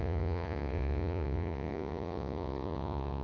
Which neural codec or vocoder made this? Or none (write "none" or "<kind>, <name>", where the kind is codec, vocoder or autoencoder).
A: vocoder, Vocos